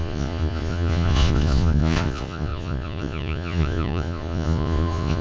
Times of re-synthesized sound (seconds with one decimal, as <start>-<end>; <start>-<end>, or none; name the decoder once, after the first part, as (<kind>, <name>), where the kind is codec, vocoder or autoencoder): 0.0-5.2 (vocoder, Vocos)